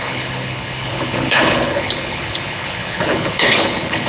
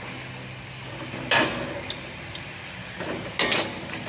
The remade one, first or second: first